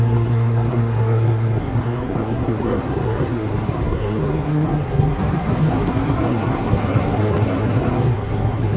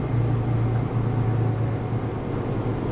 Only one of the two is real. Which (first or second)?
second